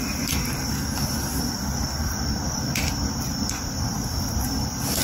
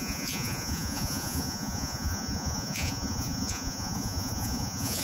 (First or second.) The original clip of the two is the first